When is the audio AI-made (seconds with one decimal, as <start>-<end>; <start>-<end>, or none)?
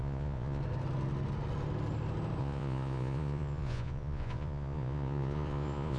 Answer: 0.0-0.6; 2.4-6.0